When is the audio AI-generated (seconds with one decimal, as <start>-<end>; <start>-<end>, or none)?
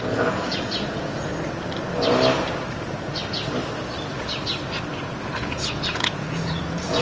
0.0-1.3; 5.0-7.0